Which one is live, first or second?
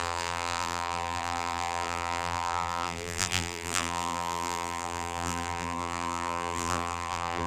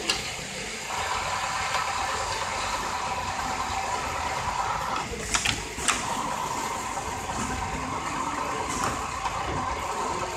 second